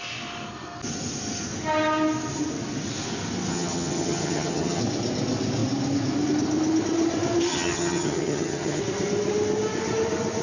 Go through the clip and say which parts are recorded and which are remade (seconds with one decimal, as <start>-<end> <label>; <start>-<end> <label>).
0.0-3.5 recorded; 3.5-4.8 remade; 4.8-7.5 recorded; 7.5-8.8 remade; 8.8-10.4 recorded